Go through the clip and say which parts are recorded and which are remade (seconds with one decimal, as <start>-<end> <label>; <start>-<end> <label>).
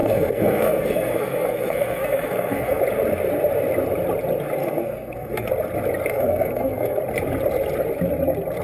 0.0-2.8 remade; 2.8-4.6 recorded; 4.6-5.5 remade; 5.5-6.1 recorded; 6.1-7.0 remade; 7.0-8.6 recorded